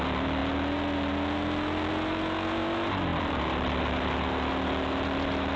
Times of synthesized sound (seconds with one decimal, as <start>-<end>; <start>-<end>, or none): none